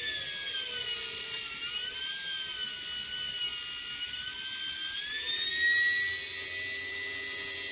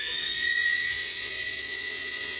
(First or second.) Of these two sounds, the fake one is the second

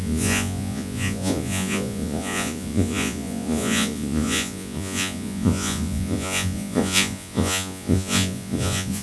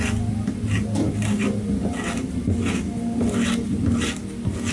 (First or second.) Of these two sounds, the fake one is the first